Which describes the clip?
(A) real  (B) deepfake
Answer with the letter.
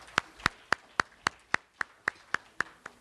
A